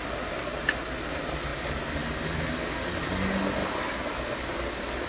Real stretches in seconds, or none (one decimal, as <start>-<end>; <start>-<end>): 0.0-3.6; 4.3-5.1